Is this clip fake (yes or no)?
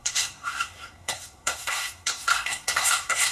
yes